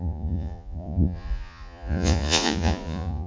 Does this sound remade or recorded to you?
remade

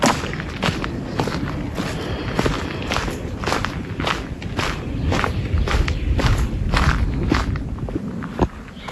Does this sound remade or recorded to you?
recorded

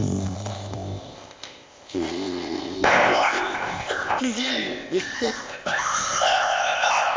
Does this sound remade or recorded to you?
remade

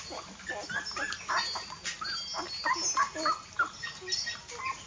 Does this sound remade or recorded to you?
recorded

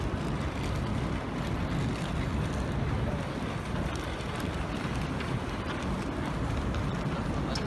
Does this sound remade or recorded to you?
recorded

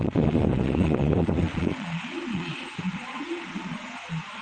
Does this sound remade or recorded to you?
remade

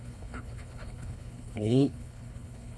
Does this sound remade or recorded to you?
remade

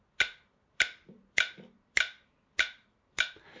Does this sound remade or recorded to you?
recorded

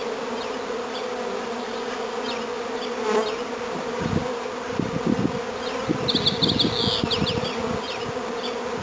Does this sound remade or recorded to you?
recorded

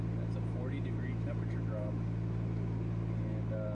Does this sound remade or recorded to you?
recorded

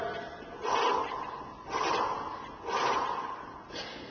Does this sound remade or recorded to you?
recorded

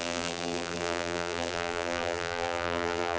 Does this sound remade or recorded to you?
remade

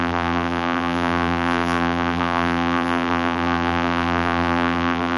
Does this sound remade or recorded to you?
remade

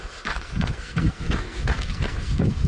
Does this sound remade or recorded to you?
remade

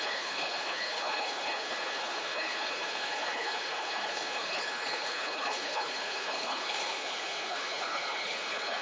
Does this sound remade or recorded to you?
remade